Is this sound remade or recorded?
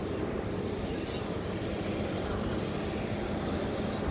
recorded